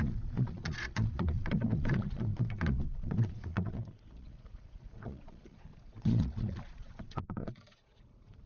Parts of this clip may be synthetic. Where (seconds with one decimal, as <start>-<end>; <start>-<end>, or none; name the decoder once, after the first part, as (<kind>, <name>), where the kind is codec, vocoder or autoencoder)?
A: 0.0-8.5 (vocoder, Vocos)